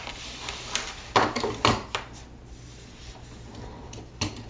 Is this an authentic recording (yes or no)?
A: yes